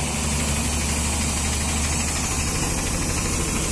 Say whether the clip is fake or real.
real